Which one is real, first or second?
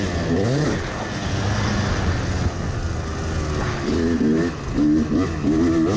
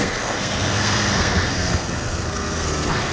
first